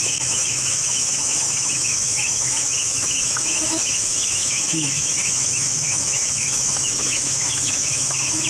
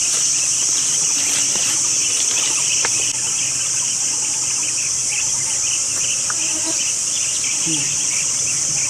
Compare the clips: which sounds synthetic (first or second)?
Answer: first